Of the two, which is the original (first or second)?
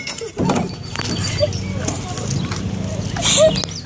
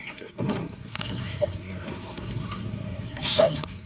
first